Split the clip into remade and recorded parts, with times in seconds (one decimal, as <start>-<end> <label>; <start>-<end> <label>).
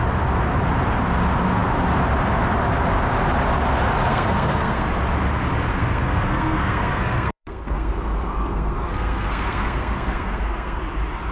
0.0-4.1 recorded; 4.1-4.9 remade; 4.9-5.7 recorded; 5.7-7.9 remade; 7.9-8.3 recorded; 8.3-10.8 remade; 10.8-11.3 recorded